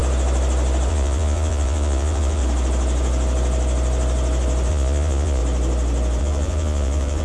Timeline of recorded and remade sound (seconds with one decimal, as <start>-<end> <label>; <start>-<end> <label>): 0.0-0.9 recorded; 0.9-2.4 remade; 2.4-4.7 recorded; 4.7-5.4 remade; 5.4-6.2 recorded; 6.2-7.2 remade